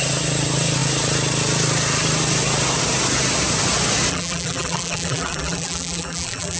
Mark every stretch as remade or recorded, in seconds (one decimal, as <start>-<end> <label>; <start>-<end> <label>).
0.0-4.1 recorded; 4.1-6.6 remade